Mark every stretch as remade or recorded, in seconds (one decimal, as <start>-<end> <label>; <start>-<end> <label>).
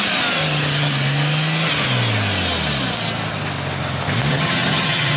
0.0-0.4 recorded; 0.4-0.9 remade; 0.9-4.3 recorded; 4.3-5.2 remade